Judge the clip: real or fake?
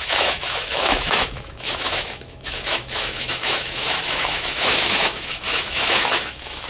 fake